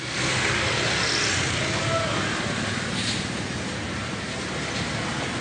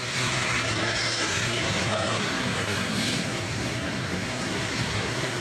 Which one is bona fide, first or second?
first